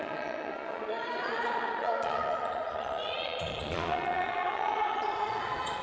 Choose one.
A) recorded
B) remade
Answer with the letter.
B